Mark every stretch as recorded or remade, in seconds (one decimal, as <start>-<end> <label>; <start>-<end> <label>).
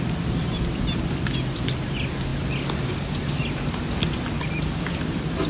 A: 0.0-5.5 recorded